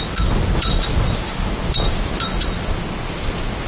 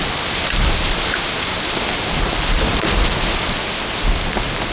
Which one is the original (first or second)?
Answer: first